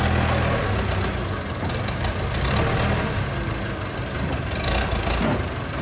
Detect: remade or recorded recorded